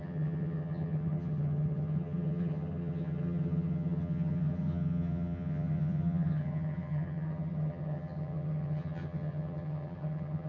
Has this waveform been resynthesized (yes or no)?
yes